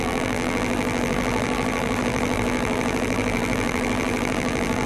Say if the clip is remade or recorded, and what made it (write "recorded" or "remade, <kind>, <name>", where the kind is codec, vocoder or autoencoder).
remade, vocoder, BigVGAN v2